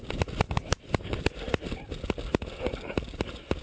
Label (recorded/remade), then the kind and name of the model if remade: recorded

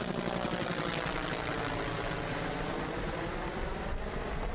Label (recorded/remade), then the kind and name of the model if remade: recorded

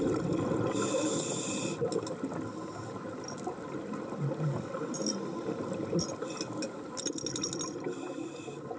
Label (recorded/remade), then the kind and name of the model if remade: recorded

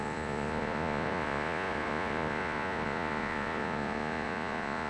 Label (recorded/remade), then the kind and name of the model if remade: remade, vocoder, Vocos